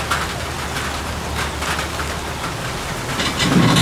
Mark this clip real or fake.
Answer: real